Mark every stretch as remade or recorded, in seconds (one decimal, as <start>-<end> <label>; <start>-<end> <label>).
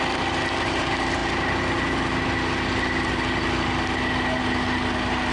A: 0.0-5.3 recorded